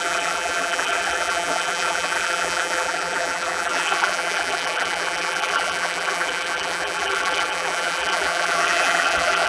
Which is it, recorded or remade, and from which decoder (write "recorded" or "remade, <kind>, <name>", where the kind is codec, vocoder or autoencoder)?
remade, vocoder, BigVGAN v2